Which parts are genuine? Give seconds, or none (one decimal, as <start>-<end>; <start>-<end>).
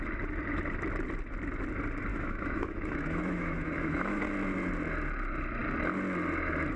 0.0-2.1; 4.2-6.8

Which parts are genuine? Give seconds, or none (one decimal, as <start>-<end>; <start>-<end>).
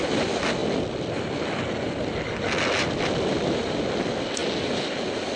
0.0-5.4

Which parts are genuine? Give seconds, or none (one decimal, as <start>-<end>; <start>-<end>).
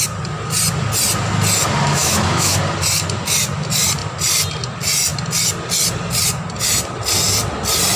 0.0-1.9; 2.6-8.0